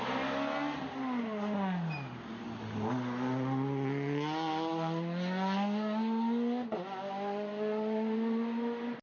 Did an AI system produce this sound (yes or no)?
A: no